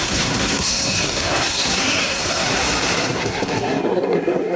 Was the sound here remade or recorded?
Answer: remade